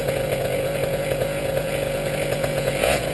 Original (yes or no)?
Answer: no